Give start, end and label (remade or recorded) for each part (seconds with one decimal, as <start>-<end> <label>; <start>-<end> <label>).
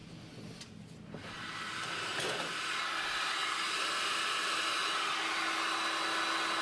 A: 0.0-6.6 recorded